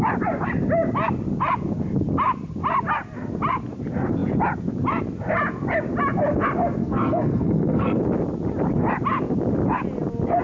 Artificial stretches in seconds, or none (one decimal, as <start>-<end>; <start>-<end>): 6.8-8.0